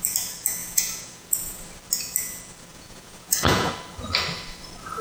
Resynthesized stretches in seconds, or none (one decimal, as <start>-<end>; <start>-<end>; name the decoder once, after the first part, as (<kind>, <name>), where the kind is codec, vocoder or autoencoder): 0.6-1.6 (vocoder, Vocos); 2.7-3.7